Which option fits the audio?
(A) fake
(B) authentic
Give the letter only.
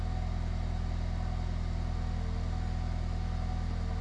B